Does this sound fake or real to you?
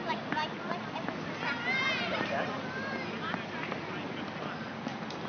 real